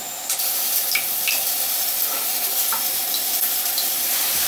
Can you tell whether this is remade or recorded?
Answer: recorded